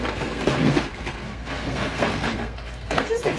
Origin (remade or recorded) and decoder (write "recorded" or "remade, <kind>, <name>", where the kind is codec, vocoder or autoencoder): remade, codec, SNAC